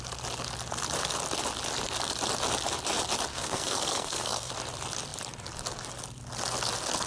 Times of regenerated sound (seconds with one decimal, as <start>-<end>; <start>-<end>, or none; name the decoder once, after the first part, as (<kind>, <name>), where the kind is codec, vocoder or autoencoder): 3.3-4.5 (codec, SNAC)